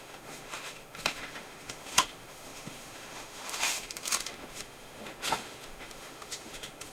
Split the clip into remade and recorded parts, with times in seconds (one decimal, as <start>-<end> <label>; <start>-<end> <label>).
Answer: 0.0-6.9 remade